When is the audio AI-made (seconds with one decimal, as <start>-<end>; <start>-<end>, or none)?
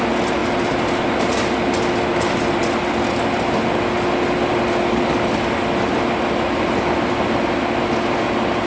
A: none